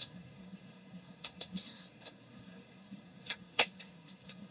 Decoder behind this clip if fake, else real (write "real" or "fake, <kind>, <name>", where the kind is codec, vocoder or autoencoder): fake, codec, SNAC